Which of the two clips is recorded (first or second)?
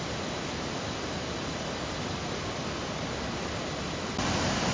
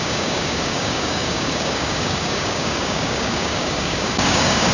first